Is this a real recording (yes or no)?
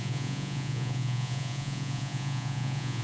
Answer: no